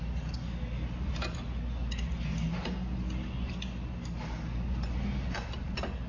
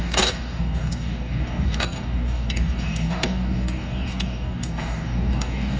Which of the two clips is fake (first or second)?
second